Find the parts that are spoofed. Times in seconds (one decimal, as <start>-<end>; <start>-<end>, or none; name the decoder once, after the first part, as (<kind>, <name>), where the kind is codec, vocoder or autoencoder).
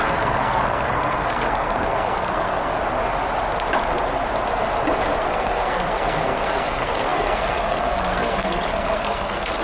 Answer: 0.0-2.7 (codec, SNAC); 5.2-9.6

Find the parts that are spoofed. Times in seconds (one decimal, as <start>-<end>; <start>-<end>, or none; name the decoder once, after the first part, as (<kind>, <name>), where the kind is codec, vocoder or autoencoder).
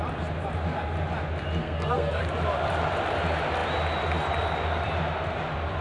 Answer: 1.6-2.2 (codec, SNAC)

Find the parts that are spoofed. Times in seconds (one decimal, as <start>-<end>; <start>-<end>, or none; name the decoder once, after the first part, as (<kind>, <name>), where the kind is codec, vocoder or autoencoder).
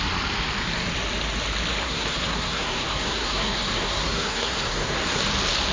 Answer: 1.8-5.2 (codec, SNAC)